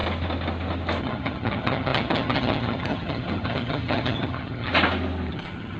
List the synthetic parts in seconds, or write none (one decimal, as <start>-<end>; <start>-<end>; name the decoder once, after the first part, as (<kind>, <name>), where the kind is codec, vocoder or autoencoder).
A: 1.0-4.7 (vocoder, HiFi-GAN); 5.3-5.8